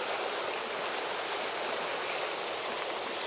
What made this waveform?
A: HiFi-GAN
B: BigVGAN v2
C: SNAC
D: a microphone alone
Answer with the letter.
D